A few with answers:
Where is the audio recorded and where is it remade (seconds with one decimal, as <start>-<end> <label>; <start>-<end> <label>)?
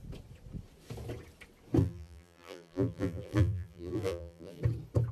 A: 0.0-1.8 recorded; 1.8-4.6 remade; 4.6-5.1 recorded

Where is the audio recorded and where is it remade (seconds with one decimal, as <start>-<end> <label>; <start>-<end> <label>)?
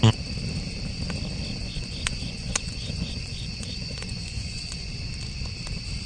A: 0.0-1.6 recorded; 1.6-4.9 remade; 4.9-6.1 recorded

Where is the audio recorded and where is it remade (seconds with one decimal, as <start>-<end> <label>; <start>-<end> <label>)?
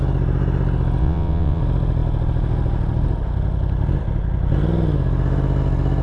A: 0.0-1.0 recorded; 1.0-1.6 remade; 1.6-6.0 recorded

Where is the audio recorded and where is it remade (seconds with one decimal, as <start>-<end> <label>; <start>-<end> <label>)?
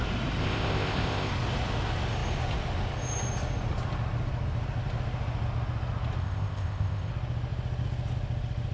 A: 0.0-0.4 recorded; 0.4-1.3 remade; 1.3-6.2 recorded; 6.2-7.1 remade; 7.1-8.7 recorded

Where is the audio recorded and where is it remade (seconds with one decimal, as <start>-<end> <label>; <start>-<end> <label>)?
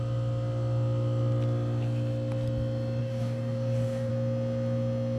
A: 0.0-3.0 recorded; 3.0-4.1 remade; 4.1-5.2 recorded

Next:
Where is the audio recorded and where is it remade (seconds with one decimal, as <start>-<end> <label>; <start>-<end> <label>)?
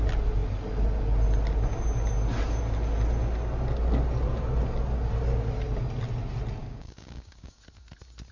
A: 0.0-6.6 recorded; 6.6-7.6 remade; 7.6-8.3 recorded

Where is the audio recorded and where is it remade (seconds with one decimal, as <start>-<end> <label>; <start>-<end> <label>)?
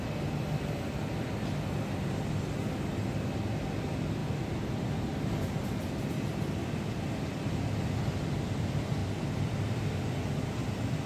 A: 0.0-4.2 recorded; 4.2-6.1 remade; 6.1-9.0 recorded; 9.0-9.6 remade; 9.6-11.1 recorded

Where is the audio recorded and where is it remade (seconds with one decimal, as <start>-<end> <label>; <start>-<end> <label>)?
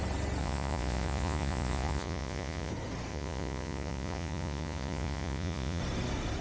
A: 0.0-0.4 recorded; 0.4-2.7 remade; 2.7-3.1 recorded; 3.1-5.8 remade; 5.8-6.4 recorded